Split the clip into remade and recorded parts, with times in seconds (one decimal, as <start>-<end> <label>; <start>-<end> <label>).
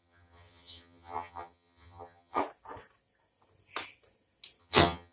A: 0.0-2.4 remade; 2.4-4.6 recorded; 4.6-5.1 remade